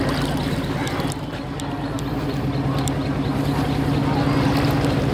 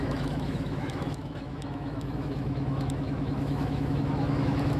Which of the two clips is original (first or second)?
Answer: first